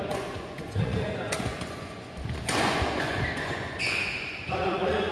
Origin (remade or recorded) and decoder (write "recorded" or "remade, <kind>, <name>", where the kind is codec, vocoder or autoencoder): remade, vocoder, Vocos